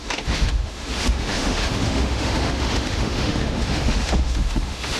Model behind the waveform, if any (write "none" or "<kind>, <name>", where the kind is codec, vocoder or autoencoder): autoencoder, DAC-VAE